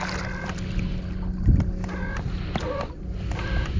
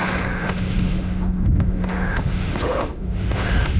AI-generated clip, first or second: second